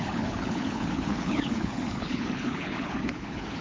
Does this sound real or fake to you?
fake